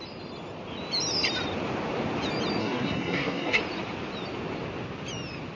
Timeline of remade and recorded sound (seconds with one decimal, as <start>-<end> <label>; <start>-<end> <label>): 0.0-2.6 recorded; 2.6-3.6 remade; 3.6-5.6 recorded